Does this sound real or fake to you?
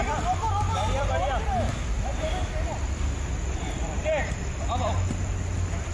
real